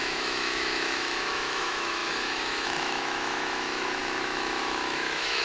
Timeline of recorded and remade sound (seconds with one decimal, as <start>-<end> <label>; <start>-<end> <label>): 0.0-5.4 remade